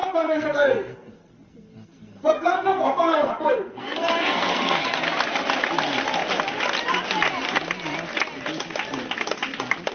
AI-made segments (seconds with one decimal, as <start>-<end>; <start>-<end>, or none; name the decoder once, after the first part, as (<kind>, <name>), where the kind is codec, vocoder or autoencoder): 0.0-5.0 (codec, SNAC)